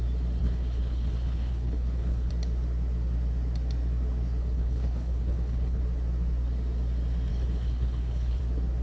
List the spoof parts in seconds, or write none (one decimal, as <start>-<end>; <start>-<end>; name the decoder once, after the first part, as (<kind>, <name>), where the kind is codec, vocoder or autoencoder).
0.4-2.3 (codec, HILCodec); 4.4-5.8; 7.3-8.4